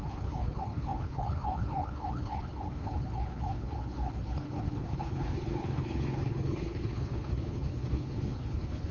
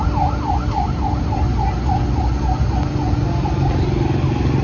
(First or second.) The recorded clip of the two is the second